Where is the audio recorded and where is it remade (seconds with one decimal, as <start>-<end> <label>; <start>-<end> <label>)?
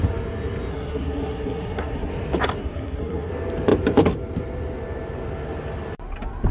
0.0-0.7 recorded; 0.7-2.1 remade; 2.1-2.6 recorded; 2.6-3.3 remade; 3.3-6.5 recorded